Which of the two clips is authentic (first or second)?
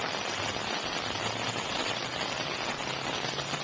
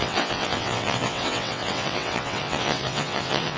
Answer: first